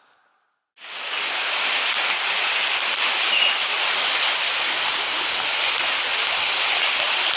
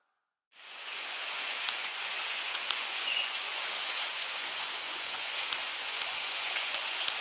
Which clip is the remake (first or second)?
second